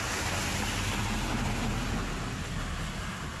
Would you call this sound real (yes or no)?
yes